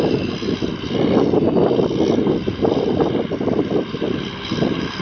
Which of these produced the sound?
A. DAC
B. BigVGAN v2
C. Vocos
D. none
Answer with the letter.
D